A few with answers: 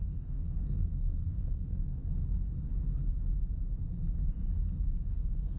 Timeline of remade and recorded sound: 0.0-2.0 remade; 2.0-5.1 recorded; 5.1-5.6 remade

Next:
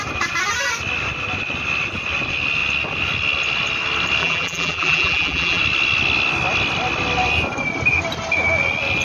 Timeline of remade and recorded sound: 0.0-4.2 recorded; 4.2-5.6 remade; 5.6-9.0 recorded